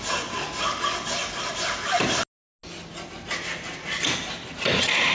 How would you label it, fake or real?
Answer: real